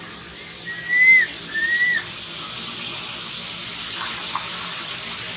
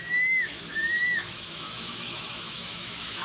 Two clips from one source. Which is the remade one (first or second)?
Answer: second